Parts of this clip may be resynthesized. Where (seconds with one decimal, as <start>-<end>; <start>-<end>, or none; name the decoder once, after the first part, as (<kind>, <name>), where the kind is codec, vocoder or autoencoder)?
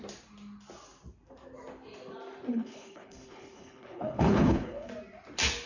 2.5-4.9 (codec, HILCodec)